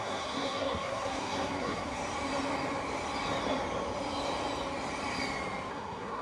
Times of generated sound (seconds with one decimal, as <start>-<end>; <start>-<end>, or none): 0.0-2.0; 5.7-6.2